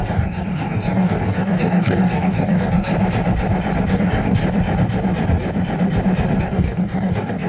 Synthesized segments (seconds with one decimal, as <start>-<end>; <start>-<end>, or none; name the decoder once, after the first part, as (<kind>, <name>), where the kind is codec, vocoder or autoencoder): 0.0-2.9 (codec, DAC); 3.9-4.4; 6.4-7.5